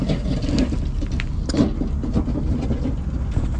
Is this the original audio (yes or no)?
yes